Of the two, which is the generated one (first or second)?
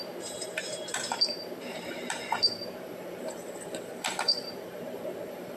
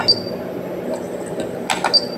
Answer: first